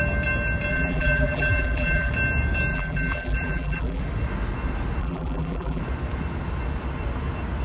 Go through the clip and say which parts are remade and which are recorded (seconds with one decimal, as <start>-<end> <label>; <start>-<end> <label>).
0.0-0.7 recorded; 0.7-2.1 remade; 2.1-2.7 recorded; 2.7-4.0 remade; 4.0-5.0 recorded; 5.0-5.8 remade; 5.8-7.6 recorded